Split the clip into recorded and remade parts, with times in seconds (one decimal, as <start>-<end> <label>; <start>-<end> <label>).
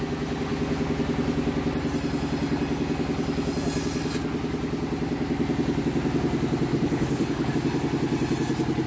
0.0-6.7 recorded; 6.7-7.5 remade; 7.5-8.9 recorded